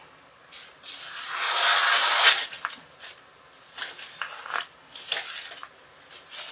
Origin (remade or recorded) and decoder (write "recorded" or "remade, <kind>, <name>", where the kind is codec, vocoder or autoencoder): recorded